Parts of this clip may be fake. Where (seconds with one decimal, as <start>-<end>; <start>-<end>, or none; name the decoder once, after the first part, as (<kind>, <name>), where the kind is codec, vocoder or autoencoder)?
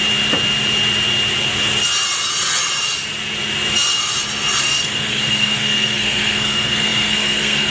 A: 4.6-7.7 (codec, SNAC)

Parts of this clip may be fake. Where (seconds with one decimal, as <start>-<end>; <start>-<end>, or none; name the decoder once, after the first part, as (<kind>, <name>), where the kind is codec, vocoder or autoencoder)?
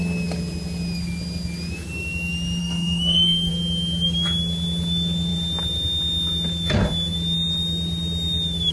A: 2.6-3.5 (codec, SNAC)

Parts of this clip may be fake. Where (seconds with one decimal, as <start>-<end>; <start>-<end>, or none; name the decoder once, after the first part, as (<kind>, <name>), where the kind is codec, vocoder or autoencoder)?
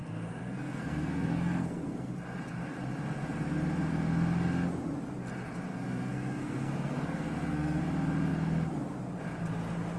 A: 0.0-2.1 (codec, SNAC); 5.7-7.8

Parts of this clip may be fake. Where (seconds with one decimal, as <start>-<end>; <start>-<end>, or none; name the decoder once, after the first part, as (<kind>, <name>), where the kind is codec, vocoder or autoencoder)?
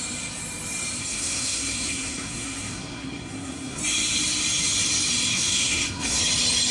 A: 1.0-3.8 (codec, SNAC); 5.3-6.2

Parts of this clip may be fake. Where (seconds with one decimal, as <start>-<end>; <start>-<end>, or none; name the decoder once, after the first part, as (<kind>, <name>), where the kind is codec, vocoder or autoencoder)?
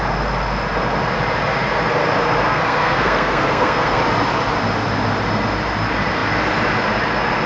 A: 2.5-4.0 (codec, SNAC)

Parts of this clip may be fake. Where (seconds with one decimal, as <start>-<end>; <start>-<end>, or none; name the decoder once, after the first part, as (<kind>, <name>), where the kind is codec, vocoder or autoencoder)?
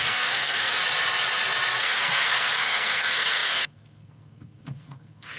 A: 0.0-0.8 (codec, SNAC); 1.8-5.4